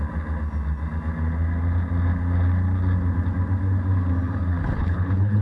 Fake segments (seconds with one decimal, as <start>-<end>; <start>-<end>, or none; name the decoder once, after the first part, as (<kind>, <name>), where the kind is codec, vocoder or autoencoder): 4.6-5.4 (codec, HILCodec)